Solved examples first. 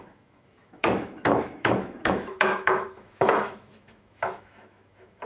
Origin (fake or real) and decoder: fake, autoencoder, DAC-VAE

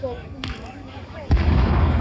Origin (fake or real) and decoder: fake, codec, DAC